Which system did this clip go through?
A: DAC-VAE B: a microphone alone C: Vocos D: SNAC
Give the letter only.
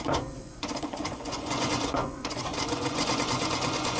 C